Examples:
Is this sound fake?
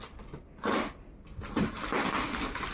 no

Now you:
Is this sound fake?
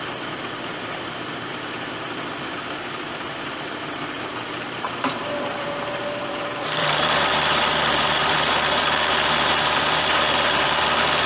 yes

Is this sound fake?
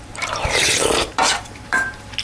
yes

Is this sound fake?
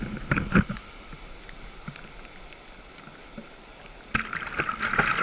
no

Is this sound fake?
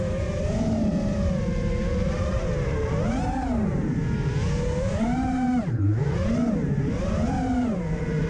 yes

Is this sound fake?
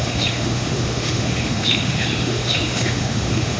yes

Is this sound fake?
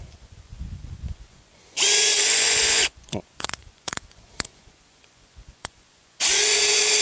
yes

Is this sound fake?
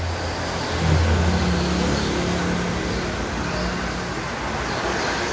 no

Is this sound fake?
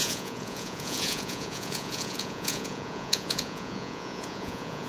yes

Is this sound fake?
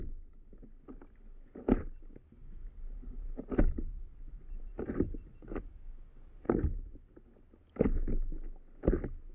no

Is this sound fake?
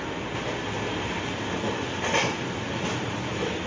no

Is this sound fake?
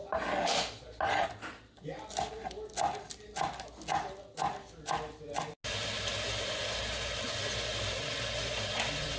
no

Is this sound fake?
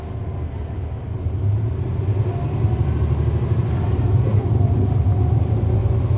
no